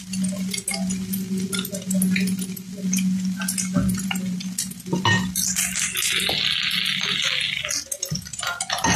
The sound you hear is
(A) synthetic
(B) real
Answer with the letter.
B